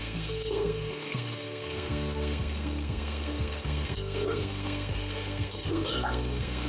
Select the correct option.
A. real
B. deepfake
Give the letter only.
B